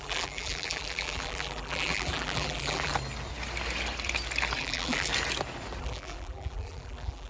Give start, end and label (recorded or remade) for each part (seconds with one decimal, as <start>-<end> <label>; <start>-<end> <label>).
0.0-2.9 remade; 2.9-4.6 recorded; 4.6-5.1 remade; 5.1-5.8 recorded; 5.8-7.3 remade